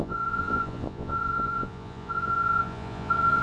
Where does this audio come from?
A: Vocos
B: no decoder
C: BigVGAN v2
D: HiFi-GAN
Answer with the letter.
A